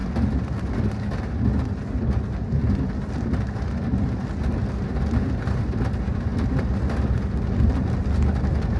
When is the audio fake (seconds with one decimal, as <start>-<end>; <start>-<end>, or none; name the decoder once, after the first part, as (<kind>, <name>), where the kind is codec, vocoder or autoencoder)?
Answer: none